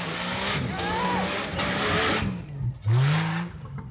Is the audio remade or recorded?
recorded